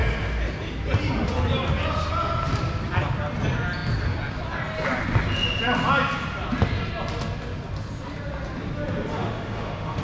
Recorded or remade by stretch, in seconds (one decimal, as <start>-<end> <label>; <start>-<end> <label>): 0.0-9.1 recorded; 9.1-10.0 remade